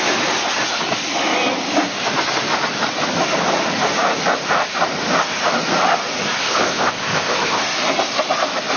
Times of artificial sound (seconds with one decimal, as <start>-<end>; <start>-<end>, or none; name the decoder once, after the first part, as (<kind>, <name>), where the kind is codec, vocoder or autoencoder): 6.4-7.6 (codec, ZipCodec)